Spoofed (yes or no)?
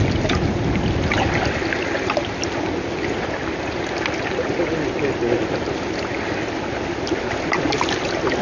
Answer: no